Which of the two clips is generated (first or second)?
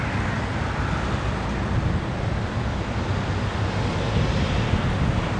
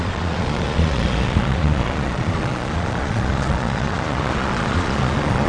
second